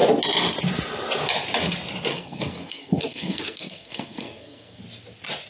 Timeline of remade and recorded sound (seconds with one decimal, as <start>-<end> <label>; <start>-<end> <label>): 0.0-2.1 recorded; 2.1-4.8 remade; 4.8-5.5 recorded